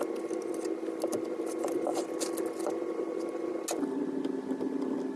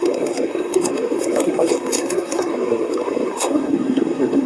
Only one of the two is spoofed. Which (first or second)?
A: second